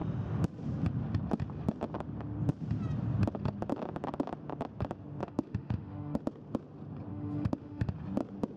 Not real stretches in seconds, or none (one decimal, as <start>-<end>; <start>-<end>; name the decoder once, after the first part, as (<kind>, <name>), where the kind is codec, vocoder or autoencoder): 5.2-6.2 (autoencoder, DAC-VAE); 7.1-7.9